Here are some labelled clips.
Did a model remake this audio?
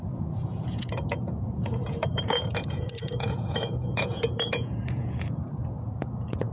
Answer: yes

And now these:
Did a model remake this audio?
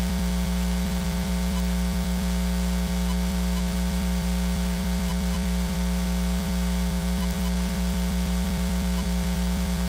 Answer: yes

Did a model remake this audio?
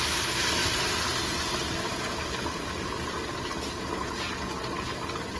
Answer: no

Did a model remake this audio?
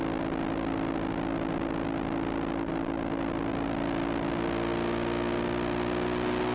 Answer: no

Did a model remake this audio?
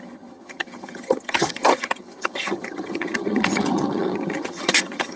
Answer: yes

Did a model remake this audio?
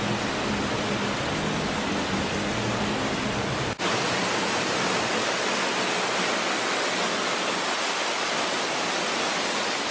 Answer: no